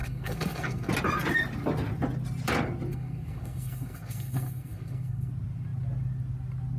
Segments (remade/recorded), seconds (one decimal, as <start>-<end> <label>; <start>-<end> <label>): 0.0-0.9 remade; 0.9-2.9 recorded; 2.9-5.3 remade; 5.3-6.8 recorded